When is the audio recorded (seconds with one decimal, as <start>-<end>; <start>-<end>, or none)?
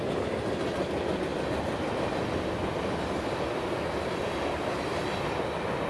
0.0-5.9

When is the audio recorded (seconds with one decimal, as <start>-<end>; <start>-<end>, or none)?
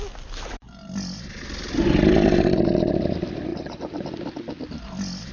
0.0-3.5; 4.1-5.3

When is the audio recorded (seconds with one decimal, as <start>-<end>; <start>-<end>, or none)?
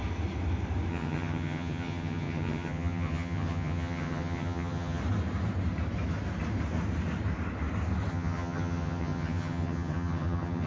0.0-0.9; 5.0-8.1